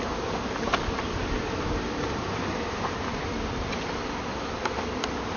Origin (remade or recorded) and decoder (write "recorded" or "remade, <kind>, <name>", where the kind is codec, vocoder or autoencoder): recorded